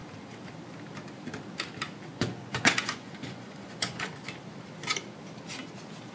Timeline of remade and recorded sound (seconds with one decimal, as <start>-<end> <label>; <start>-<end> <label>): 0.0-2.1 recorded; 2.1-4.1 remade; 4.1-6.1 recorded

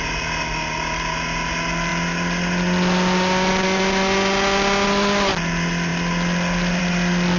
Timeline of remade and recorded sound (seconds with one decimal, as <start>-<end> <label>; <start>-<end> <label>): 0.0-7.4 recorded

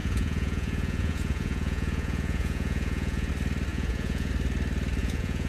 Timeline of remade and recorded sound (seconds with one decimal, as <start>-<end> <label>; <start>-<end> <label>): 0.0-3.3 remade; 3.3-3.7 recorded; 3.7-4.3 remade; 4.3-5.0 recorded; 5.0-5.5 remade

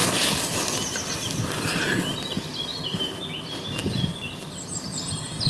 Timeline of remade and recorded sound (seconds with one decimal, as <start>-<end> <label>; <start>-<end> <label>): 0.0-3.8 recorded; 3.8-4.3 remade; 4.3-5.5 recorded

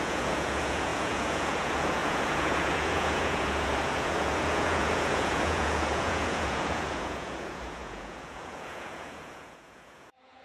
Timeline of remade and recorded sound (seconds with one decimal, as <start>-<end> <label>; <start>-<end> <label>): 0.0-10.4 remade

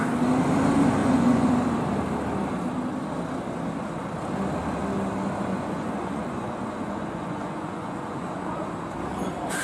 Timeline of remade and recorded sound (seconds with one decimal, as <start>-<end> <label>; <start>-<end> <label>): 0.0-1.0 recorded; 1.0-1.5 remade; 1.5-5.5 recorded; 5.5-8.7 remade; 8.7-9.6 recorded